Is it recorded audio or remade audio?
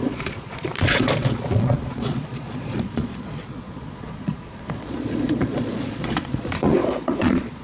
remade